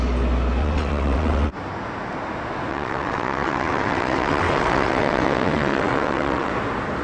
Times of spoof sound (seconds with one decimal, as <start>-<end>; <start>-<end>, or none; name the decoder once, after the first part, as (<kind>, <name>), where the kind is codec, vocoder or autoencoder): 0.6-1.5 (vocoder, WaveNeXt); 2.7-6.5